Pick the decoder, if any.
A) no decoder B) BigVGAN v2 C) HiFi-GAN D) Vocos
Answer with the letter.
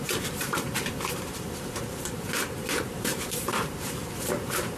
B